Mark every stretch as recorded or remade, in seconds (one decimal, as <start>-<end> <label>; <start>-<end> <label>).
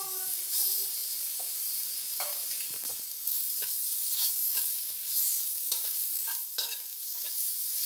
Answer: 0.0-7.9 remade